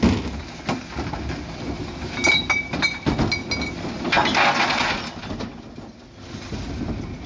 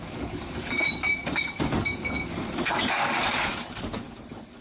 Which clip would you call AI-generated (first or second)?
second